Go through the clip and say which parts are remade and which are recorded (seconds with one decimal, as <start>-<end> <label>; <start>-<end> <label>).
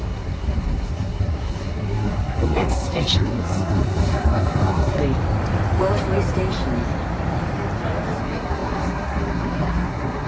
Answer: 0.0-5.0 remade; 5.0-8.2 recorded; 8.2-10.3 remade